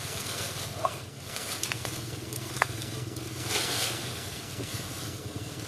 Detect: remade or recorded remade